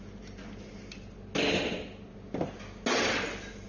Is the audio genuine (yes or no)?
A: yes